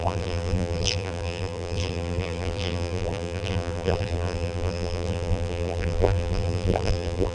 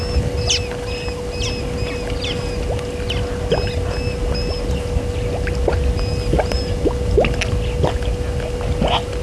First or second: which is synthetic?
first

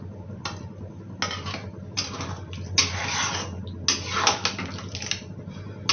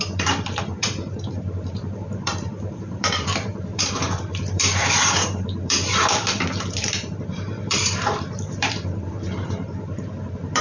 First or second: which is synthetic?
second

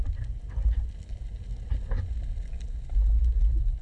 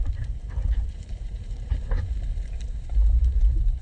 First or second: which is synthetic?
second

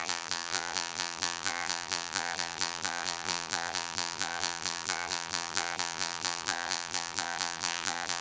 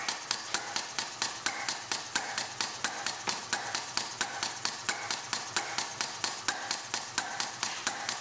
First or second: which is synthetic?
first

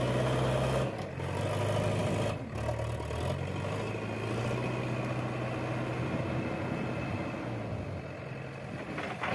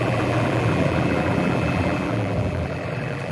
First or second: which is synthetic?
second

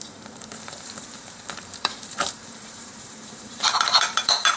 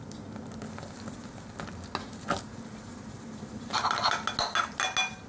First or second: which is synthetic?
first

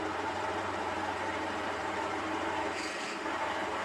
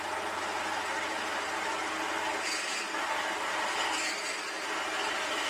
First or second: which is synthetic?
first